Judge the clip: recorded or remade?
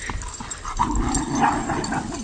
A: recorded